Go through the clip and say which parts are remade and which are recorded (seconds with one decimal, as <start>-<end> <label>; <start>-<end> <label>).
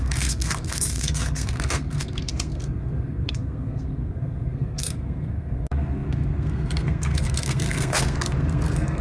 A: 0.0-9.0 remade